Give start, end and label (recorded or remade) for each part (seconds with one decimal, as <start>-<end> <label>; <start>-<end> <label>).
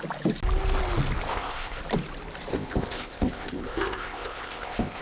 0.0-1.3 recorded; 1.3-1.8 remade; 1.8-2.5 recorded; 2.5-5.0 remade